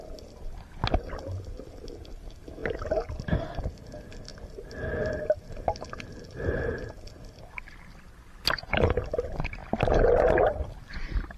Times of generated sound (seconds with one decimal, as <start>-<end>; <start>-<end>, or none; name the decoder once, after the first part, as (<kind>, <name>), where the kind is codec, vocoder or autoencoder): none